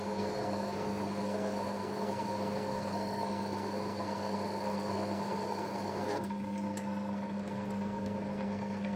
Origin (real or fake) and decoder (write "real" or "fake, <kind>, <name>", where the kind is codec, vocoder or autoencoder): fake, codec, SNAC